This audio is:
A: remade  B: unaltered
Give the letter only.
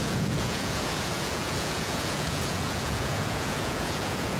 A